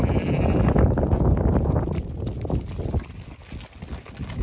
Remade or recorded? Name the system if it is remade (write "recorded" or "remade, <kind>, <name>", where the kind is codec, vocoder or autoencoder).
recorded